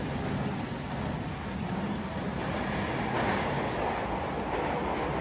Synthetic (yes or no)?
no